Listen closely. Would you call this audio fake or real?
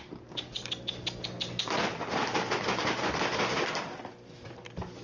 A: real